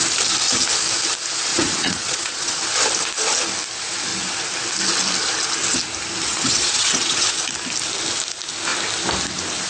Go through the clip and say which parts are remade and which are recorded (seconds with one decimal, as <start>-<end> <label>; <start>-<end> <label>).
0.0-1.5 recorded; 1.5-2.6 remade; 2.6-6.3 recorded; 6.3-7.4 remade; 7.4-9.7 recorded